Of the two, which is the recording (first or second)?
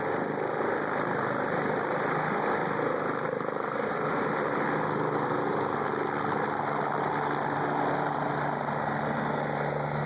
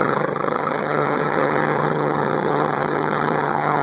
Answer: first